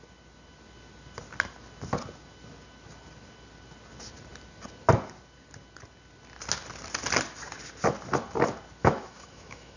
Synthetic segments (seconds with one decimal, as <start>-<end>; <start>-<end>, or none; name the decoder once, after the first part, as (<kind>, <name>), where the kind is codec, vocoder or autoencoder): 8.8-9.8 (autoencoder, DAC-VAE)